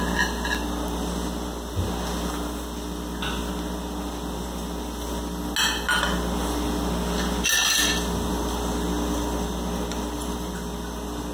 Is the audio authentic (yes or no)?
yes